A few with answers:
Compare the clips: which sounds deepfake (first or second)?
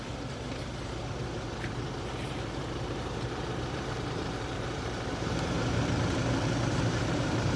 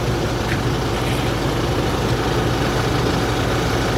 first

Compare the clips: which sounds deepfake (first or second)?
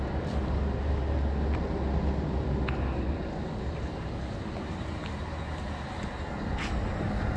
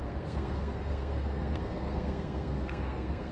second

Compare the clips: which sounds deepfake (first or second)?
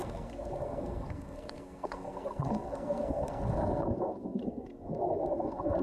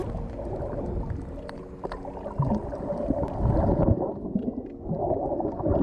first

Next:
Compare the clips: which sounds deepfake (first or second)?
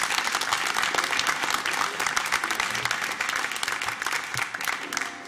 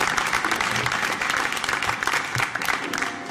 second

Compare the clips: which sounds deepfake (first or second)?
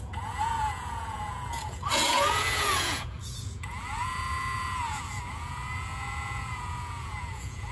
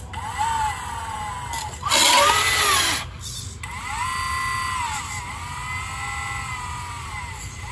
first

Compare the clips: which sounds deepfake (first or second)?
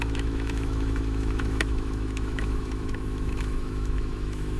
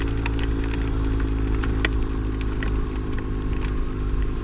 first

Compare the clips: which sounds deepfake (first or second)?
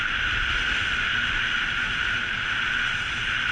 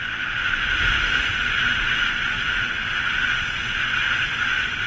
second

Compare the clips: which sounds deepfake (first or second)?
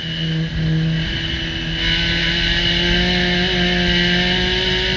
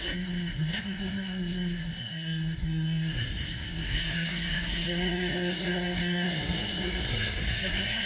second